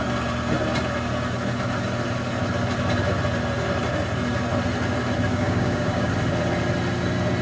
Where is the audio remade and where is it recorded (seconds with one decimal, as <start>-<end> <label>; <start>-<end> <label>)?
0.0-5.3 recorded; 5.3-6.1 remade; 6.1-7.4 recorded